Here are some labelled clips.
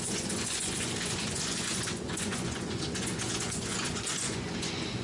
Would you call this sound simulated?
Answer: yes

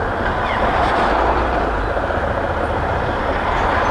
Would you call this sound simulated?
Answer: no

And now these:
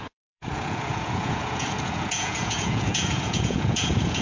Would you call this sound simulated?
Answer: yes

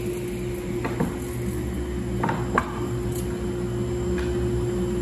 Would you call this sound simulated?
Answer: no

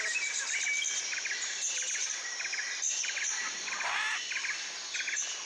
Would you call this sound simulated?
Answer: no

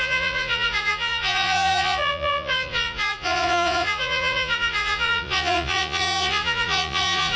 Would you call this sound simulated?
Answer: yes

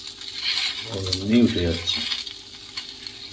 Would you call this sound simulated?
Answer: no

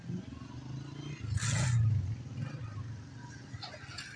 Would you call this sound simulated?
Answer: no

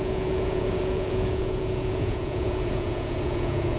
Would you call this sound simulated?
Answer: yes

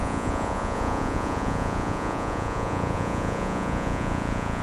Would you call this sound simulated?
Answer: yes